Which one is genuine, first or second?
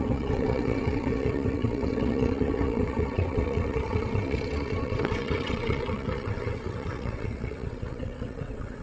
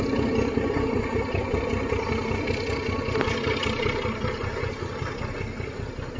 second